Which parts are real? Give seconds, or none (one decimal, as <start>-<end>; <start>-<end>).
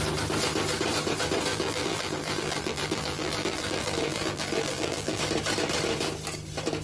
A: 0.0-1.5; 5.2-6.8